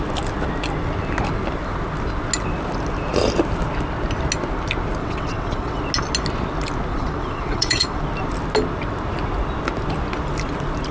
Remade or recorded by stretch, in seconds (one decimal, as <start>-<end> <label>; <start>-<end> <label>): 0.0-5.0 recorded; 5.0-5.8 remade; 5.8-6.9 recorded; 6.9-8.0 remade; 8.0-10.9 recorded